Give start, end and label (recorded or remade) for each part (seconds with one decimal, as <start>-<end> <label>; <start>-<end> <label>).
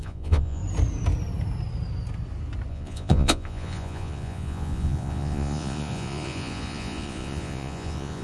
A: 0.0-0.6 remade; 0.6-2.7 recorded; 2.7-8.2 remade